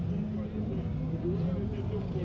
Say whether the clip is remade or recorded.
recorded